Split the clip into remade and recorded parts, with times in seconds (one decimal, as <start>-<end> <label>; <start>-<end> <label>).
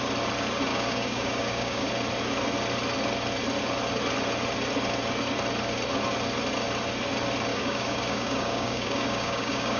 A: 0.0-0.7 recorded; 0.7-1.9 remade; 1.9-7.5 recorded; 7.5-9.8 remade